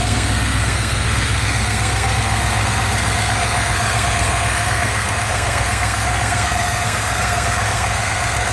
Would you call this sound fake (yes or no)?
yes